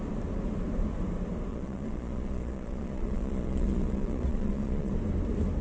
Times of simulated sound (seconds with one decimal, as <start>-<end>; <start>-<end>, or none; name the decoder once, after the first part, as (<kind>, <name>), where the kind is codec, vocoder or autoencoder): 1.5-4.9 (vocoder, Vocos)